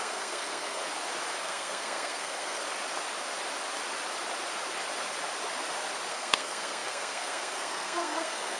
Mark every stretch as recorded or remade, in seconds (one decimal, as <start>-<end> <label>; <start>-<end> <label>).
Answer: 0.0-0.8 remade; 0.8-1.4 recorded; 1.4-2.6 remade; 2.6-6.1 recorded; 6.1-8.6 remade

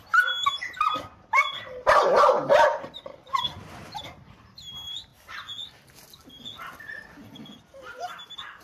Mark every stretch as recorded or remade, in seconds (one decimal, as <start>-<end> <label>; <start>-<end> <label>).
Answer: 0.0-8.6 recorded

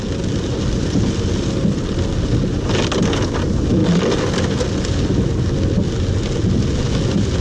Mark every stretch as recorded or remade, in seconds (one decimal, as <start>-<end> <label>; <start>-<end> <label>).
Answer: 0.0-7.4 recorded

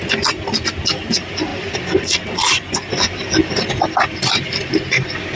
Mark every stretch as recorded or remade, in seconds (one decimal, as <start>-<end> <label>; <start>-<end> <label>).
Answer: 0.0-5.4 recorded

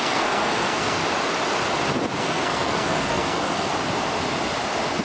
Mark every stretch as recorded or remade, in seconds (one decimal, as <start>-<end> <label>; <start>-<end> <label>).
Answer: 0.0-1.0 remade; 1.0-2.2 recorded; 2.2-3.7 remade; 3.7-5.0 recorded

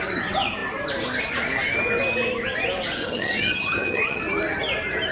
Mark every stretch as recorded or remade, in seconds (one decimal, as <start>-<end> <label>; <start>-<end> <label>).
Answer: 0.0-3.0 recorded; 3.0-4.2 remade; 4.2-5.1 recorded

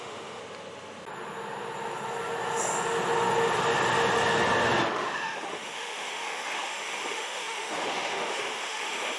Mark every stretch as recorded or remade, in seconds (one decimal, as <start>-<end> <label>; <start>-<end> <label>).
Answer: 0.0-0.4 remade; 0.4-4.9 recorded; 4.9-9.2 remade

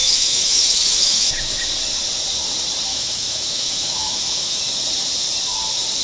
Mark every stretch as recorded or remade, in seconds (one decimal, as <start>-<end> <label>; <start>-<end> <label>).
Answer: 0.0-1.6 remade; 1.6-2.9 recorded; 2.9-4.6 remade; 4.6-6.0 recorded